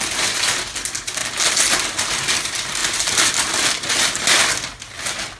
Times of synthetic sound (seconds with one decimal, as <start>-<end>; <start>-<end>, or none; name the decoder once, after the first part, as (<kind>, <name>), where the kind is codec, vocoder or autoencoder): none